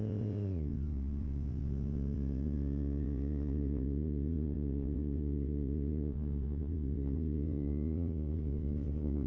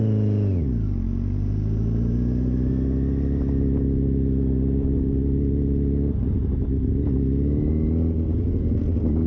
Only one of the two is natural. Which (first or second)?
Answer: second